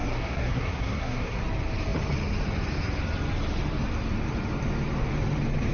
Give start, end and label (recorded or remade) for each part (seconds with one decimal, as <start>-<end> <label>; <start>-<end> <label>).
0.0-1.4 remade; 1.4-5.7 recorded